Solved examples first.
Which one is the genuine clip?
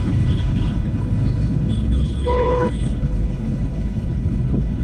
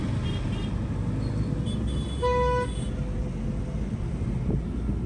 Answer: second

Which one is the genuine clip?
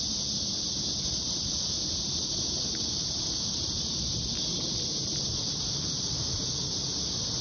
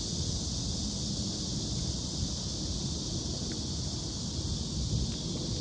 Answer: second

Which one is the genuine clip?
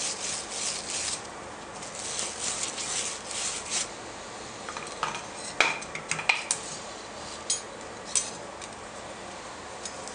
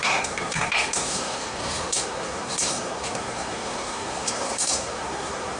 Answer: first